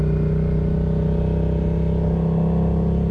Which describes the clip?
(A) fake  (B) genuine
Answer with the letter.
B